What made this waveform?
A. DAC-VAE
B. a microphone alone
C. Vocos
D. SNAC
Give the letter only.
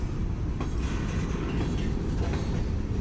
B